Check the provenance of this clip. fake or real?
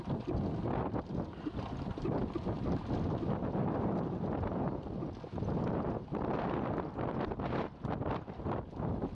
real